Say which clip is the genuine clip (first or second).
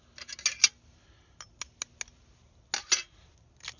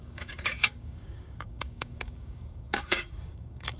first